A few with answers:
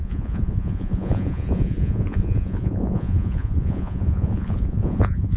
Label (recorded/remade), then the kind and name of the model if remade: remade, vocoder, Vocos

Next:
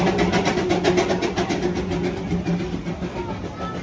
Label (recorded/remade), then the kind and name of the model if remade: recorded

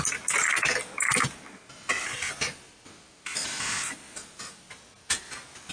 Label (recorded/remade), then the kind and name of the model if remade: recorded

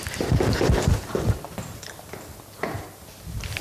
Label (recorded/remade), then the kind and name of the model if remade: recorded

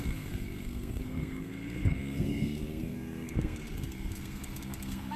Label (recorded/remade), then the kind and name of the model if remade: remade, codec, SNAC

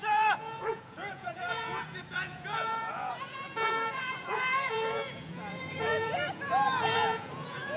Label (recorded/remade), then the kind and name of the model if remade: remade, vocoder, Vocos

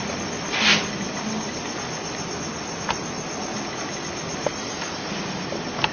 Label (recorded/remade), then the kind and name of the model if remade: recorded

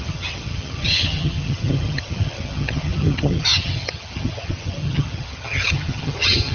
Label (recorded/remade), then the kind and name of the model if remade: remade, vocoder, HiFi-GAN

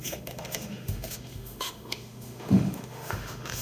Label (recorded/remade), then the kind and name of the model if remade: remade, autoencoder, DAC-VAE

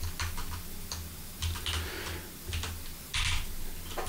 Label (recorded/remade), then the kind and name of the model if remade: recorded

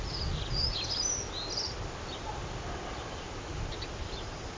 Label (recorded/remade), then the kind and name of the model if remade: recorded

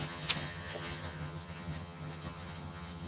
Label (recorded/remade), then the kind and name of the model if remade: remade, vocoder, HiFi-GAN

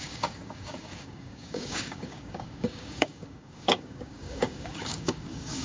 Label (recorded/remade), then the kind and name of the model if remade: remade, codec, DAC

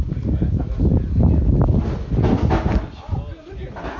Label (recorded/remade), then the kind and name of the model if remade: recorded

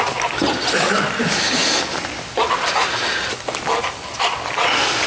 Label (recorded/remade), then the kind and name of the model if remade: recorded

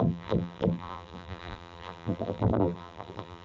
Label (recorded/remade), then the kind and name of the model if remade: remade, vocoder, BigVGAN v2